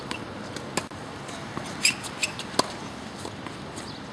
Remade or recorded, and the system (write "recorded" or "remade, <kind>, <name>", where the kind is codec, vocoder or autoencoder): recorded